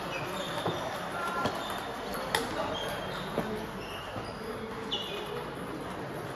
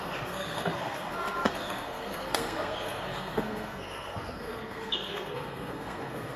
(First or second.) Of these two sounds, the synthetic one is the second